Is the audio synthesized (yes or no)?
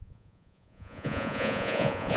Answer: yes